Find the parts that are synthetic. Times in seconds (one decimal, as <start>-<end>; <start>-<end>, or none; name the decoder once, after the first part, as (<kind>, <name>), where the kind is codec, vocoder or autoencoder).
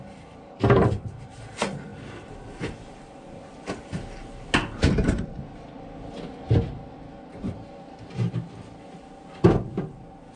none